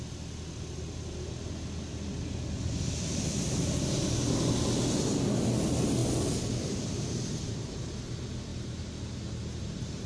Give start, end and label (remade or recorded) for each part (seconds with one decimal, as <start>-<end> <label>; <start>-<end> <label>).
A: 0.0-8.5 recorded; 8.5-10.1 remade